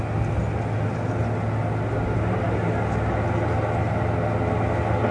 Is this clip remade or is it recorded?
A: recorded